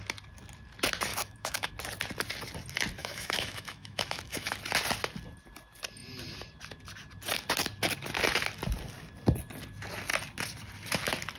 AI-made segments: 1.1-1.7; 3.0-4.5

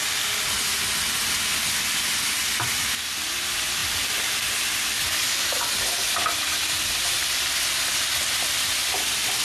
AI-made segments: none

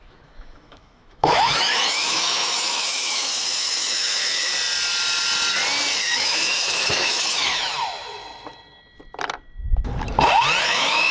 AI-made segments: 0.0-4.5; 6.0-7.7; 10.6-11.1

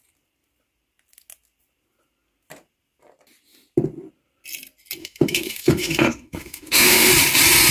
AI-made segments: 5.0-7.1

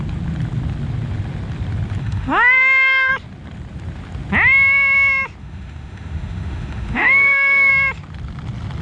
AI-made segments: 2.0-3.1; 5.4-7.7

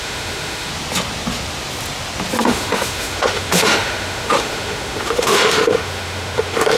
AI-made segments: 0.0-0.7; 2.4-6.8

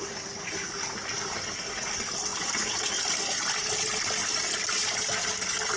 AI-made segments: none

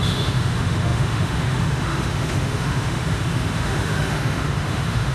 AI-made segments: 0.0-5.1